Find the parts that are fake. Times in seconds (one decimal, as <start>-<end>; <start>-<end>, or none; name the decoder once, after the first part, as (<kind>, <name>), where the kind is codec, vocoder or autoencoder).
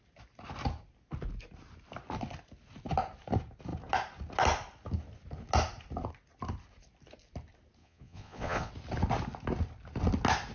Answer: 7.8-8.7 (vocoder, Vocos)